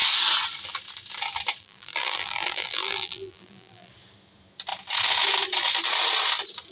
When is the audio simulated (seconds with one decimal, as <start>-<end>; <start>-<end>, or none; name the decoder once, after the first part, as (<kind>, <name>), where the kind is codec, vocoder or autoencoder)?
1.6-3.9 (vocoder, BigVGAN v2)